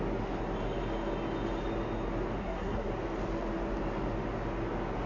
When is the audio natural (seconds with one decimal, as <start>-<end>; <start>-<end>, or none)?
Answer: 0.0-2.4; 2.9-5.1

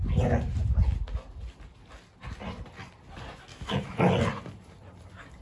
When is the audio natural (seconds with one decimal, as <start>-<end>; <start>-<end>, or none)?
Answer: 0.0-3.5; 4.0-5.4

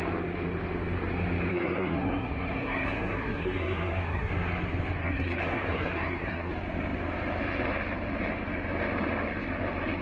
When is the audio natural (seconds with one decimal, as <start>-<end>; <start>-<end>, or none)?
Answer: 0.0-1.5; 4.3-5.0; 6.5-10.0

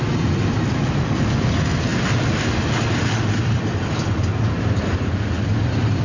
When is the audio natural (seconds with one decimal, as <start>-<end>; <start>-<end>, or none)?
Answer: 0.0-1.9; 5.1-6.0

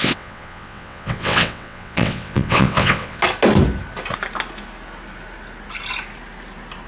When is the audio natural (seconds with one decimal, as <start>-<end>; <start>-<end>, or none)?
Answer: 3.2-6.9

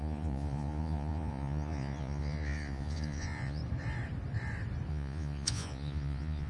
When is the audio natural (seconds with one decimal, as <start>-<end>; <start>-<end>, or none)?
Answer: 3.6-4.9

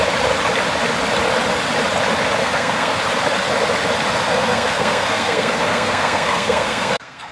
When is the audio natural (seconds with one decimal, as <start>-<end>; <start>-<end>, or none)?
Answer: 0.0-2.4; 3.0-4.3